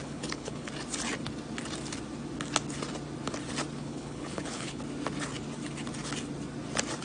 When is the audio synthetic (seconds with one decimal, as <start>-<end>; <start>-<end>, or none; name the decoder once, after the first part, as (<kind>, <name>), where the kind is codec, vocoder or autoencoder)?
0.0-0.7 (codec, HILCodec); 3.8-4.8